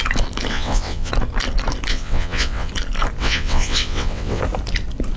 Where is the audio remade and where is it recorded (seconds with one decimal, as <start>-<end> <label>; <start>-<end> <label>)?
0.0-0.5 recorded; 0.5-1.1 remade; 1.1-1.9 recorded; 1.9-2.7 remade; 2.7-3.2 recorded; 3.2-4.4 remade; 4.4-5.2 recorded